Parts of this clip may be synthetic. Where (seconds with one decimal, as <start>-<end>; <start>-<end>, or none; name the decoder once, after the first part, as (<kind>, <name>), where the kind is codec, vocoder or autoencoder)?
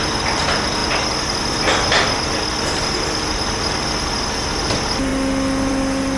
none